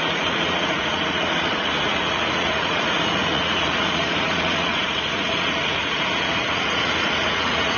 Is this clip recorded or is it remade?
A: remade